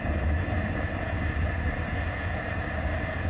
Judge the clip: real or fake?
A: real